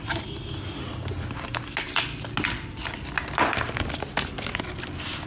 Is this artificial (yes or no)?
no